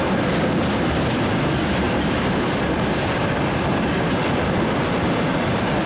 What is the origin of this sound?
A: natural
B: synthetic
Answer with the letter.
A